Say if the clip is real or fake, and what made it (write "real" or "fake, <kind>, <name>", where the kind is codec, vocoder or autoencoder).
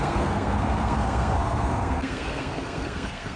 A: fake, codec, SNAC